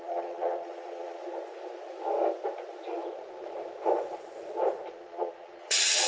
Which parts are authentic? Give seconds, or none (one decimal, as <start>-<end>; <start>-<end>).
1.2-4.9